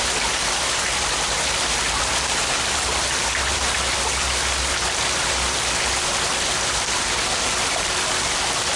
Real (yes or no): yes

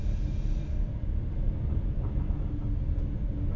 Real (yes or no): yes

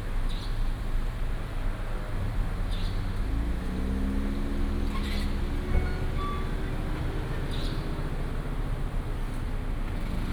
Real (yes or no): yes